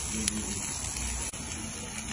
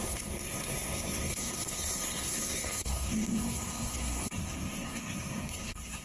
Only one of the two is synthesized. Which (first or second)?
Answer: second